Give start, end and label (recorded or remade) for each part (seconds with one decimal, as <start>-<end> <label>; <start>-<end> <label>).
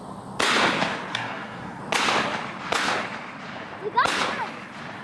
0.0-1.1 recorded; 1.1-1.8 remade; 1.8-5.0 recorded